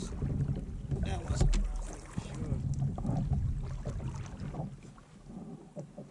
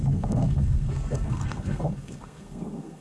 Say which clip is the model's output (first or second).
second